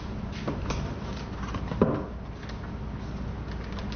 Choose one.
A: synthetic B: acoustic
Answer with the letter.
B